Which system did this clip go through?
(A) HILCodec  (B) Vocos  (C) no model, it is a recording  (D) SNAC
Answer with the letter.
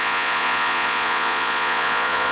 B